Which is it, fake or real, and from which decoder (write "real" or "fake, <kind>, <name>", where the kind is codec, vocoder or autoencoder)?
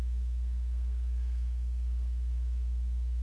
fake, codec, SNAC